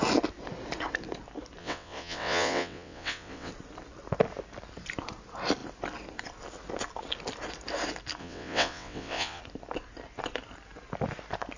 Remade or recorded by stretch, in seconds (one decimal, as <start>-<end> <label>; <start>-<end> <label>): 0.0-1.6 recorded; 1.6-3.5 remade; 3.5-8.2 recorded; 8.2-9.4 remade; 9.4-11.6 recorded